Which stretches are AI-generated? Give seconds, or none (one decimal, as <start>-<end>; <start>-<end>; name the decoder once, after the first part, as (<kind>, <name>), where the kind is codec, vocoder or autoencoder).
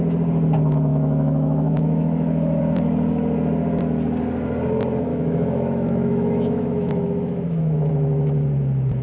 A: 0.9-2.6 (autoencoder, DAC-VAE); 5.1-7.9